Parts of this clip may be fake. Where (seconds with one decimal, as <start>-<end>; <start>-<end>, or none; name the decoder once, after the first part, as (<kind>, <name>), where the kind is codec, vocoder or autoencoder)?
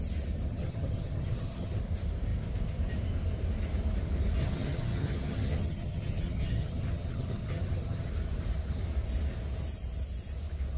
0.5-1.8 (vocoder, HiFi-GAN); 4.4-8.1